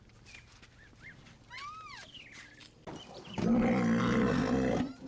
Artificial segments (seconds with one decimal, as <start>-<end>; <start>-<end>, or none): none